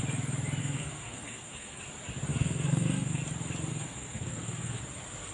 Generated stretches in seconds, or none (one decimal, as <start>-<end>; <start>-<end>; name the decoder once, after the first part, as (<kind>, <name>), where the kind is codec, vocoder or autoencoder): 0.6-1.8 (codec, SNAC); 2.3-3.2; 3.7-4.8